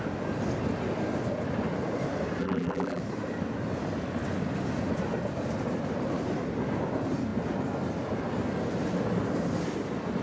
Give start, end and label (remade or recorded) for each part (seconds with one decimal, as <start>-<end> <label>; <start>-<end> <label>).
0.0-2.4 recorded; 2.4-3.0 remade; 3.0-10.2 recorded